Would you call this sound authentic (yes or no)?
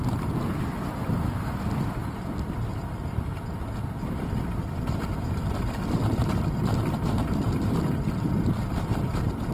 no